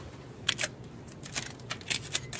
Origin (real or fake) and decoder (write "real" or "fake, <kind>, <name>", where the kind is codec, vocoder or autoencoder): real